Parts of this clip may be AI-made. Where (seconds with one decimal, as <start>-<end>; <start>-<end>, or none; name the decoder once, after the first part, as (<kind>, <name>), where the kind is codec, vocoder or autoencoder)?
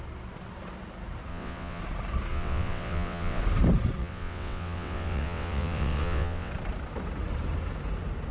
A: 1.3-1.8 (vocoder, WaveNeXt); 2.3-3.4; 4.0-6.5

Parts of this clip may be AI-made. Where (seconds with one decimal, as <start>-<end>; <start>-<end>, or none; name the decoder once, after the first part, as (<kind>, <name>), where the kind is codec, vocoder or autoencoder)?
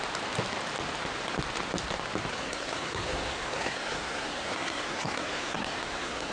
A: 2.3-6.3 (codec, SNAC)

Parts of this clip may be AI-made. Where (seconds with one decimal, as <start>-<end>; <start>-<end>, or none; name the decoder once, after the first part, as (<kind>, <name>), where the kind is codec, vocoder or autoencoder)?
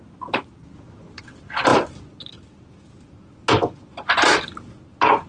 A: none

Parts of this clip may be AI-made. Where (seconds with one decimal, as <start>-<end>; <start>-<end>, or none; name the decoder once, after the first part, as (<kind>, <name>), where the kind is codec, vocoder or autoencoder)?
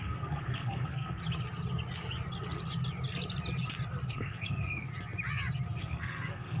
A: 0.0-1.2 (codec, SNAC); 4.1-4.9; 5.8-6.6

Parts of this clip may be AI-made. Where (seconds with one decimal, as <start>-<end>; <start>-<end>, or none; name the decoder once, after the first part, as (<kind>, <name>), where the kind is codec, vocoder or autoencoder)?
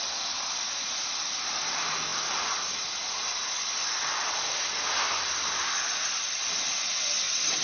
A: none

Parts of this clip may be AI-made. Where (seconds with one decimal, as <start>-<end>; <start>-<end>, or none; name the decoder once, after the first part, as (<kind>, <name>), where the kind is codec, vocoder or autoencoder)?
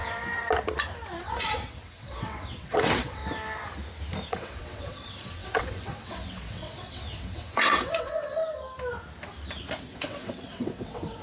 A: 1.2-3.2 (vocoder, WaveNeXt); 4.3-8.4; 9.8-11.2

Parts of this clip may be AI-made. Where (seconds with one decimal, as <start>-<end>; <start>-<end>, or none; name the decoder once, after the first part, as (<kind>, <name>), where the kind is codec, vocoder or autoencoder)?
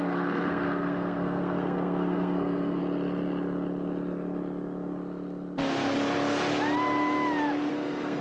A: 0.0-2.8 (codec, SNAC); 7.7-8.2